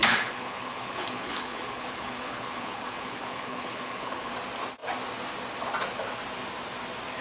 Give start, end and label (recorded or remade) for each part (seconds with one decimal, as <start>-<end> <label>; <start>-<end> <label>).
0.0-4.3 remade; 4.3-7.2 recorded